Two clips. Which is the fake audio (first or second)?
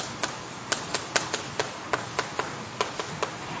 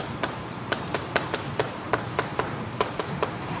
second